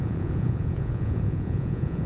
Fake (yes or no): yes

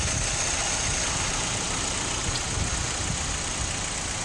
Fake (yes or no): no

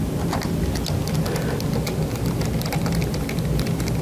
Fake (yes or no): no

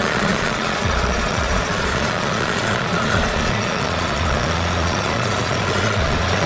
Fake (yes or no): yes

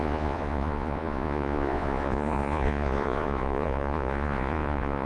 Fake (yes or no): yes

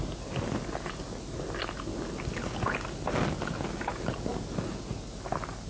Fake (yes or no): no